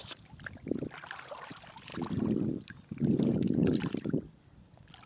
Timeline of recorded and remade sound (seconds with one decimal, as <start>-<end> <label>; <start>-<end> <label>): 0.0-0.6 remade; 0.6-1.9 recorded; 1.9-2.5 remade; 2.5-3.6 recorded; 3.6-4.4 remade; 4.4-5.1 recorded